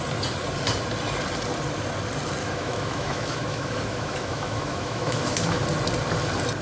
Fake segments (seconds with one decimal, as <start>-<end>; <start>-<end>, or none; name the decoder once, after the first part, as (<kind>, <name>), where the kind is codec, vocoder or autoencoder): 2.4-5.6 (autoencoder, DAC-VAE)